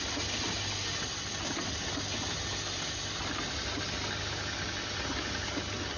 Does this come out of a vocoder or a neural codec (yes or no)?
no